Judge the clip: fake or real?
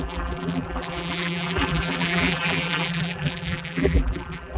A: fake